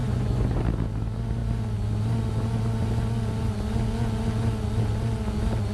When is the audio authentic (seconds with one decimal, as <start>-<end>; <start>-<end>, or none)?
0.6-5.7

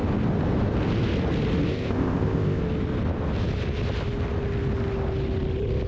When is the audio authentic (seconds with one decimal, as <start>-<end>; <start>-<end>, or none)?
0.0-1.7; 2.6-5.9

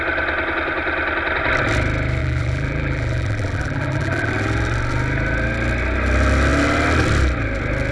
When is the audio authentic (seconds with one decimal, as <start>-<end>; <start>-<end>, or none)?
0.0-2.2; 4.3-7.9

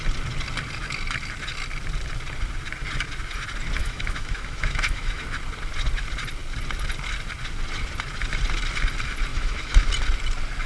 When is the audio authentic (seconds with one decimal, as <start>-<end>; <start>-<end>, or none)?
0.0-3.8; 5.2-9.3; 9.9-10.7